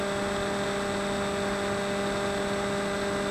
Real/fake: real